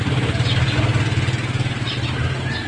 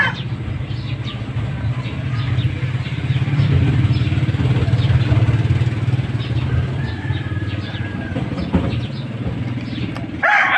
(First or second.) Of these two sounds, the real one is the first